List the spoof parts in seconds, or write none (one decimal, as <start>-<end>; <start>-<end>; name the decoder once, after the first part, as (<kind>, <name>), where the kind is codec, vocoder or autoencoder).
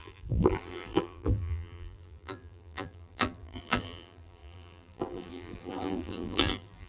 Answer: 0.0-6.9 (vocoder, BigVGAN v2)